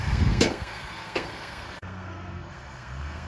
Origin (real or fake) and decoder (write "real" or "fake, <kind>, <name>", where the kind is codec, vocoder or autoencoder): fake, codec, SNAC